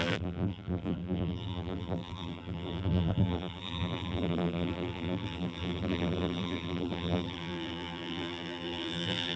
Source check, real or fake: fake